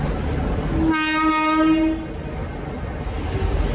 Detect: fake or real real